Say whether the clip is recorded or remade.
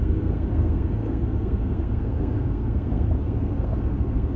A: remade